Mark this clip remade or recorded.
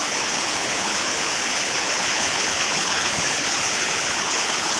remade